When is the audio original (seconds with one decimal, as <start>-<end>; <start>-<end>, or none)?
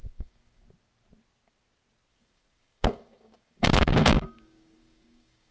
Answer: 0.6-2.1